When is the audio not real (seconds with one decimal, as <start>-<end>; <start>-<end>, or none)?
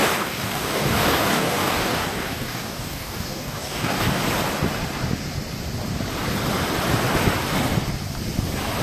0.0-4.2